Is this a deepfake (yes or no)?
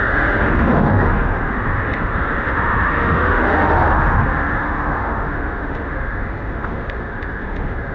yes